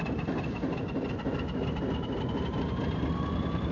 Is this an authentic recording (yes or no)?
yes